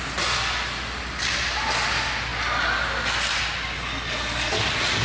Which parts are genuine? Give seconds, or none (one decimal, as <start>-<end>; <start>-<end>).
0.0-5.0